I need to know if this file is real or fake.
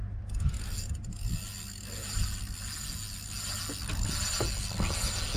real